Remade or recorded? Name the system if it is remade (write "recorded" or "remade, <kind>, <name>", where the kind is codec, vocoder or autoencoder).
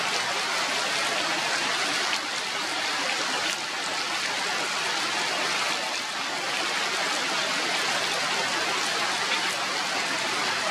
recorded